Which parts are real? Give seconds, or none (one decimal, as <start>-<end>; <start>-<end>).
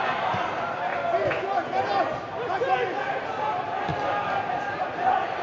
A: 0.9-1.5; 3.9-4.5